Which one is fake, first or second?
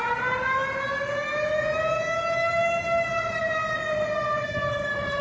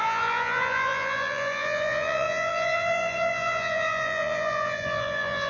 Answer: second